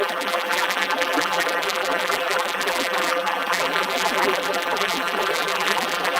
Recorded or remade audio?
remade